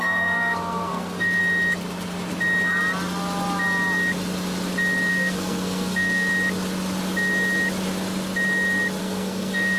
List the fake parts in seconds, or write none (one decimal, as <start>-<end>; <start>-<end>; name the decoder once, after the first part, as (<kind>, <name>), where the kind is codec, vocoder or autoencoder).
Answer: 0.0-1.4 (codec, SNAC); 5.1-6.3; 9.0-9.8